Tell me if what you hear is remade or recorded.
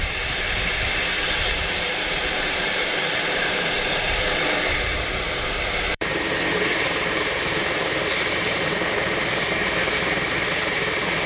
remade